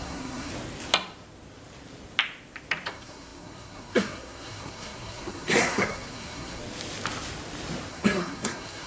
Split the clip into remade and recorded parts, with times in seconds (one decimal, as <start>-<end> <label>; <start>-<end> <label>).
0.0-0.5 remade; 0.5-2.9 recorded; 2.9-6.6 remade; 6.6-7.9 recorded; 7.9-8.9 remade